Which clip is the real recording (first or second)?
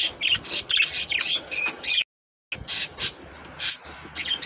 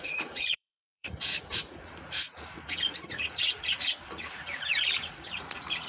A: first